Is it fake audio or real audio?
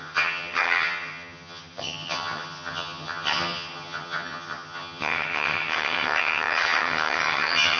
fake